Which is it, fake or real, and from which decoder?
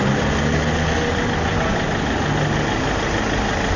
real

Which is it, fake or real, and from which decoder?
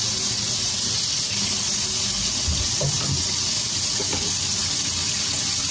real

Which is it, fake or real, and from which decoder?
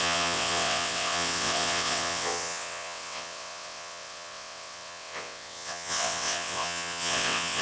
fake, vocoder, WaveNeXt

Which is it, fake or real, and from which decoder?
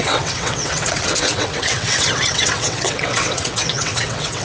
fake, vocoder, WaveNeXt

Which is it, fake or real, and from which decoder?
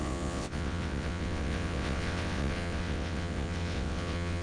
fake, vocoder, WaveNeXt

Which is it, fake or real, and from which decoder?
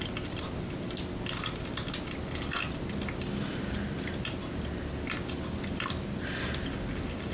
real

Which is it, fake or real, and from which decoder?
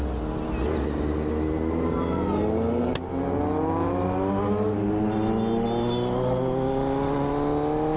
real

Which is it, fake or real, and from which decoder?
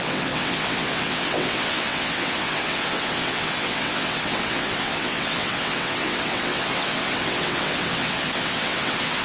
fake, vocoder, WaveNeXt